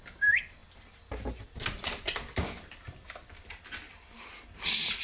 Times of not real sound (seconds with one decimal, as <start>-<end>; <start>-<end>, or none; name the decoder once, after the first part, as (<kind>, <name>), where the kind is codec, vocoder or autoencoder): 0.6-3.6 (vocoder, BigVGAN v2)